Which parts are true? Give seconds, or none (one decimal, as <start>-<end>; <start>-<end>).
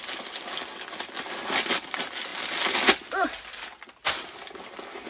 0.0-5.1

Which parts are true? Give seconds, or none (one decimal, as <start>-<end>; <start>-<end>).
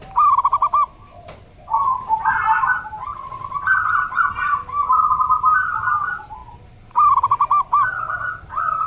0.0-8.9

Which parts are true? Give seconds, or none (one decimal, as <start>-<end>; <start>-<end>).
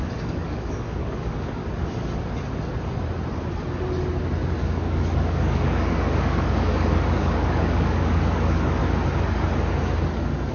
1.6-4.6; 8.8-10.5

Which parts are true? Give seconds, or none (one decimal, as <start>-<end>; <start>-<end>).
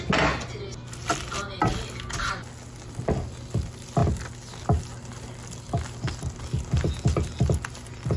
0.0-8.2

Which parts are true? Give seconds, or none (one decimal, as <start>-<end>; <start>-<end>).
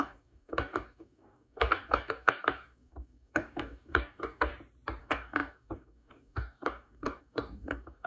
4.5-5.0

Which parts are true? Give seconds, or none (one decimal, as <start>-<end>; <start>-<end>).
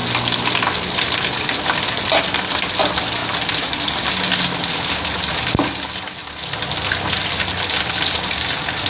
0.0-8.9